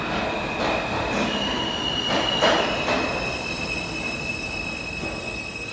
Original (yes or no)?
yes